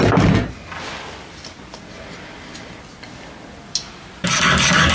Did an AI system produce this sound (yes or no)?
no